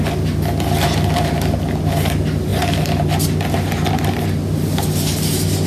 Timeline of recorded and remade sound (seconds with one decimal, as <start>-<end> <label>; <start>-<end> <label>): 0.0-5.7 recorded